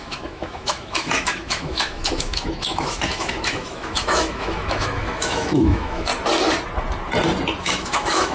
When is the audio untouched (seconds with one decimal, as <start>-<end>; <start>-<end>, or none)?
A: 6.1-7.6